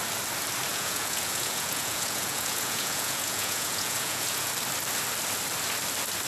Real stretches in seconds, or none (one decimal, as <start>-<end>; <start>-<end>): 0.0-0.7; 4.5-6.3